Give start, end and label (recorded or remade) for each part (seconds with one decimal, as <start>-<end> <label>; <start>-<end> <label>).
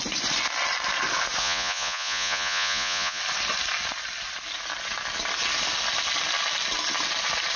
0.0-1.4 recorded; 1.4-3.2 remade; 3.2-7.6 recorded